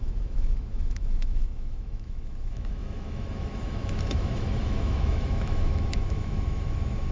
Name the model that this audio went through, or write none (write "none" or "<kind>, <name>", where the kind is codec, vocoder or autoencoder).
autoencoder, DAC-VAE